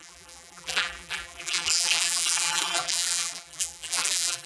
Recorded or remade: remade